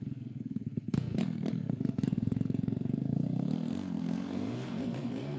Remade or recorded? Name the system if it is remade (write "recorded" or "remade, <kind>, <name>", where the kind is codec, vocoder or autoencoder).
remade, codec, SNAC